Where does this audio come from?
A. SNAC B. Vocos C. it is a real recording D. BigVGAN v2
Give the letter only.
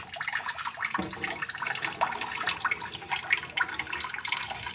C